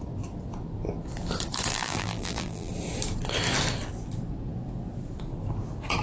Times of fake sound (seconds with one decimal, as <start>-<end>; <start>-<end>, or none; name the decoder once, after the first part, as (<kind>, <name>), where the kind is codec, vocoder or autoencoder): 1.7-2.7 (vocoder, BigVGAN v2)